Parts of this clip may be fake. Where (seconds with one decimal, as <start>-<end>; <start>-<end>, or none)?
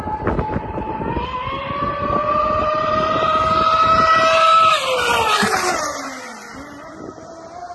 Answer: 2.6-3.4; 4.5-5.8